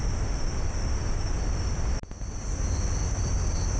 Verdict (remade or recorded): recorded